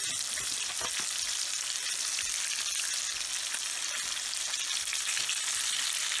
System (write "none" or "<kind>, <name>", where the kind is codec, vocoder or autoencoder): none